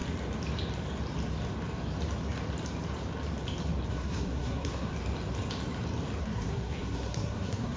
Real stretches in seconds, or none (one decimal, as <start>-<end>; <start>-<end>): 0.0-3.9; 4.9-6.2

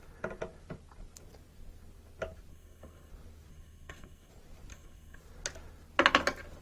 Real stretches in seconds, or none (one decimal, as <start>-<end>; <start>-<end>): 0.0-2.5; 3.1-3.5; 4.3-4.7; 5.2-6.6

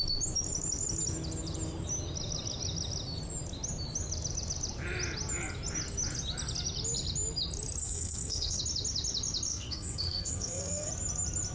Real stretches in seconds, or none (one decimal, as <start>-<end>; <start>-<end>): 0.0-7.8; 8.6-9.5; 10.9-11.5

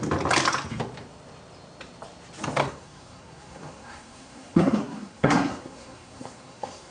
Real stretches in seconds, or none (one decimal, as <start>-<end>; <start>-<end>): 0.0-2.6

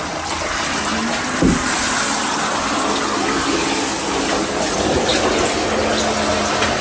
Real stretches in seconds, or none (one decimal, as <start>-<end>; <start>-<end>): 0.0-6.8

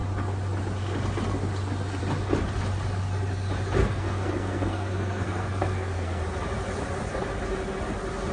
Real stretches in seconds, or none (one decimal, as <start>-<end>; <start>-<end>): 0.0-3.8; 6.2-8.3

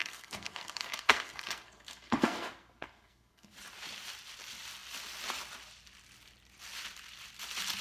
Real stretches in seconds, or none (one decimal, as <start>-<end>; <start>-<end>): 3.5-7.8

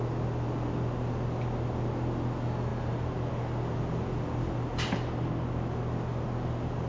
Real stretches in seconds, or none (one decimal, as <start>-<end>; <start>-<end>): 0.0-6.9